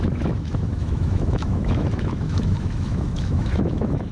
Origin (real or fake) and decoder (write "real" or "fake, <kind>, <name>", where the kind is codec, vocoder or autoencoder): fake, autoencoder, DAC-VAE